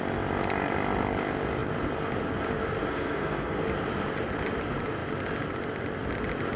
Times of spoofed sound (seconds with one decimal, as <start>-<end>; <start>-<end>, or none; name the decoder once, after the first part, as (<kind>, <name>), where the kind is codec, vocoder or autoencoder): 2.9-3.6 (codec, SNAC)